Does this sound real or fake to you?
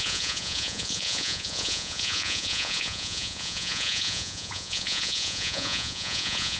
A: fake